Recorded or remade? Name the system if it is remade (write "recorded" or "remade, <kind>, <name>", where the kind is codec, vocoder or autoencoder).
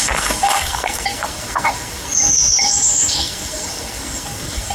remade, codec, SNAC